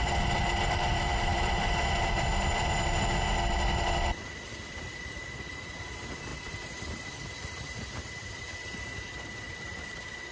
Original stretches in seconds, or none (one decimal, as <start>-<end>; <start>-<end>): none